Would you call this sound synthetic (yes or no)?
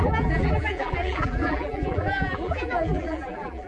yes